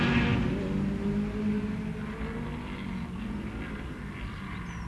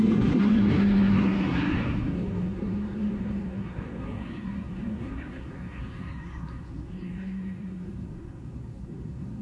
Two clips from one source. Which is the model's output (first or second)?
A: second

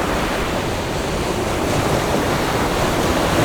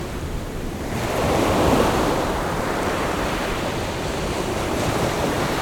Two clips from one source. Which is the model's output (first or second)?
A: second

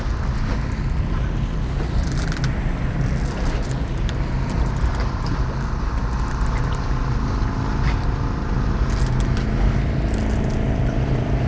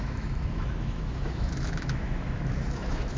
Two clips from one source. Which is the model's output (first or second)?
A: second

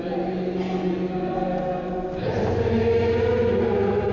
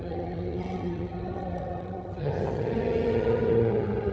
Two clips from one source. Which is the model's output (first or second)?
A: second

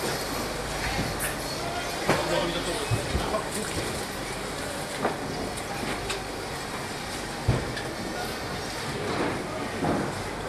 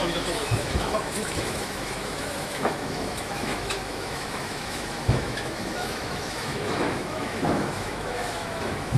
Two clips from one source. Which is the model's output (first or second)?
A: second